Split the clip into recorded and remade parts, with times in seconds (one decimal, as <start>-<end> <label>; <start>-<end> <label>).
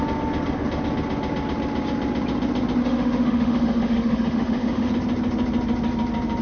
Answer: 0.0-2.8 recorded; 2.8-4.9 remade; 4.9-6.4 recorded